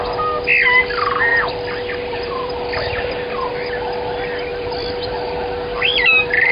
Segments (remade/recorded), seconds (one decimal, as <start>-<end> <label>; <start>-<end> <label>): 0.0-1.3 recorded; 1.3-3.5 remade; 3.5-4.5 recorded; 4.5-6.5 remade